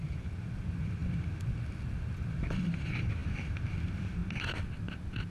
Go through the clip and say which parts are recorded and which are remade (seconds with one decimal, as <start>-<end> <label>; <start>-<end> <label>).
0.0-4.2 remade; 4.2-5.3 recorded